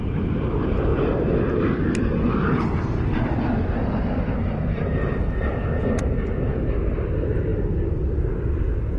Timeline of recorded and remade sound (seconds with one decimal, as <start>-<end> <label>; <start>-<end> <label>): 0.0-9.0 recorded